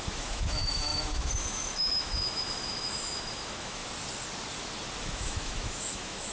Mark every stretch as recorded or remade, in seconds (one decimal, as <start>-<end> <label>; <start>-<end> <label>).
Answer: 0.0-3.8 remade; 3.8-5.0 recorded; 5.0-6.3 remade